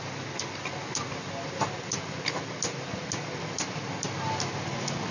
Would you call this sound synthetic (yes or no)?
no